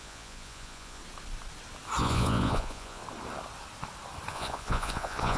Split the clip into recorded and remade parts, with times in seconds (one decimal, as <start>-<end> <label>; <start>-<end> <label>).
0.0-1.0 remade; 1.0-2.0 recorded; 2.0-3.0 remade; 3.0-4.3 recorded; 4.3-5.4 remade